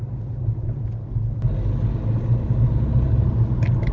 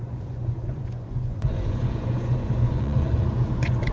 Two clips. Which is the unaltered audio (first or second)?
first